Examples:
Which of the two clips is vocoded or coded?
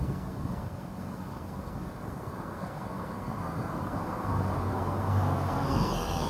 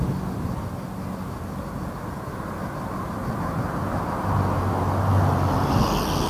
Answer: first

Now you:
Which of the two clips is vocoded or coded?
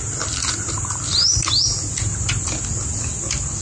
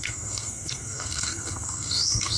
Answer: second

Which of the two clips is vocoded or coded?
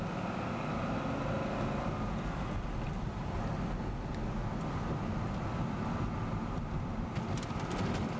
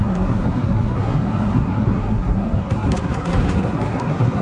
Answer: second